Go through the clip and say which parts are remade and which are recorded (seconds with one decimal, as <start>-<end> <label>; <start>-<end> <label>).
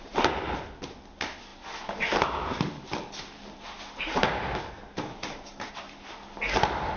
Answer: 0.0-7.0 recorded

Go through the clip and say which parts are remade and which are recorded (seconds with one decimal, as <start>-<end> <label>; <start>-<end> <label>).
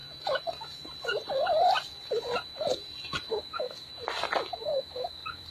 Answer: 0.0-3.3 recorded; 3.3-3.9 remade; 3.9-4.6 recorded; 4.6-5.5 remade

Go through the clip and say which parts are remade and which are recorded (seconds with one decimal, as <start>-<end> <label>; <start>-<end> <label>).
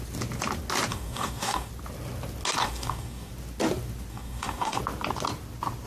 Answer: 0.0-0.9 recorded; 0.9-1.7 remade; 1.7-2.6 recorded; 2.6-3.3 remade; 3.3-4.1 recorded; 4.1-4.8 remade; 4.8-5.9 recorded